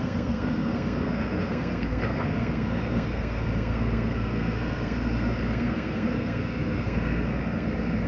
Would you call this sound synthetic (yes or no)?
yes